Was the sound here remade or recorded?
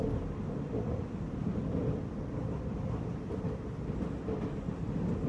recorded